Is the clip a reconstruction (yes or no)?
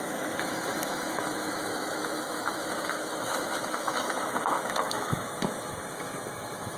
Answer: yes